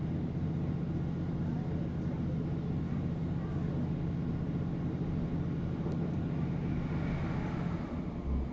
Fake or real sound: real